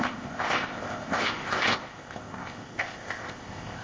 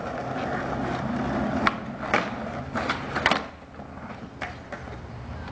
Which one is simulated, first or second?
first